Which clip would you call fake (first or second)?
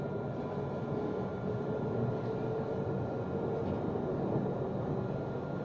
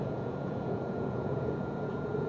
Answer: second